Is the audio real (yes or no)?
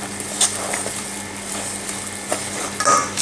yes